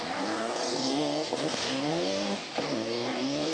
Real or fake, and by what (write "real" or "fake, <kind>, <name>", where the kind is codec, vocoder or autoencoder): fake, codec, DAC